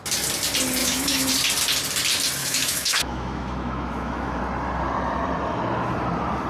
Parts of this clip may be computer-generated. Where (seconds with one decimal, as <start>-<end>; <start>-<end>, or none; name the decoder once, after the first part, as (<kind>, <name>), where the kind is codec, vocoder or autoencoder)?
0.8-1.3 (autoencoder, DAC-VAE); 2.4-4.4